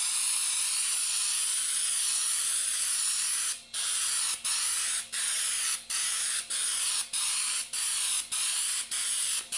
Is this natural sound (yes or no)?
yes